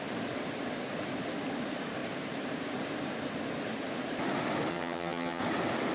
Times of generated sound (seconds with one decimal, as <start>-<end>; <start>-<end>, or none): 4.7-5.4